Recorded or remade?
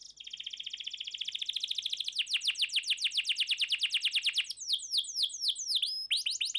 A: recorded